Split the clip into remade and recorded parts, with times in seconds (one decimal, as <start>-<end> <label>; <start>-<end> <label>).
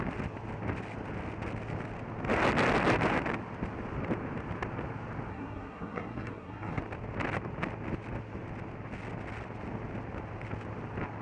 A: 0.0-5.3 recorded; 5.3-6.8 remade; 6.8-11.2 recorded